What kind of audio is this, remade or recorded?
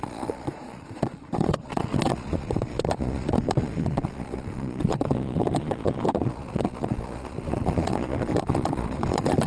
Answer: remade